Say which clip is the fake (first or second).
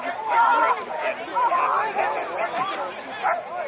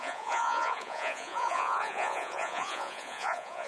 second